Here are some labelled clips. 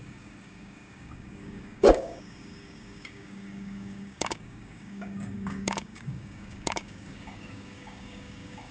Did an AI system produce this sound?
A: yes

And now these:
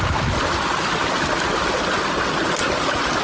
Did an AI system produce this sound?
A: no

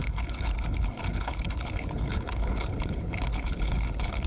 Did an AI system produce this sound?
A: yes